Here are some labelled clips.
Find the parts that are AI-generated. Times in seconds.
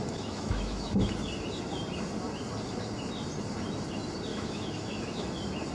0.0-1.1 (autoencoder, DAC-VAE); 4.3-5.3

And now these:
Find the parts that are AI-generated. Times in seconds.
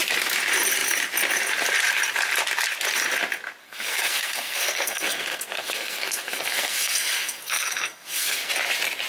3.6-8.5 (codec, SNAC)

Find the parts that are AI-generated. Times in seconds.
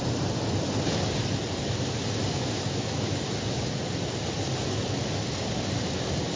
2.3-3.2 (autoencoder, DAC-VAE)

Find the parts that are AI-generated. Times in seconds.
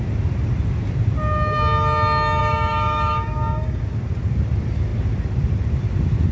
2.4-3.8 (codec, DAC)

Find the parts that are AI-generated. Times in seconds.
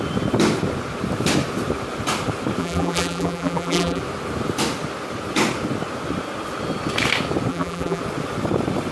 2.6-4.0 (vocoder, BigVGAN v2); 7.5-8.0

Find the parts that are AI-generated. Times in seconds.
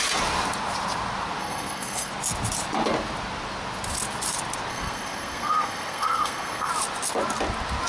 1.4-2.1 (codec, SNAC); 4.7-6.7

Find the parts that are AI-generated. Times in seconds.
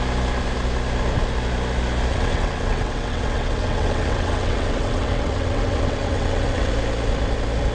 2.1-6.7 (vocoder, WaveNeXt)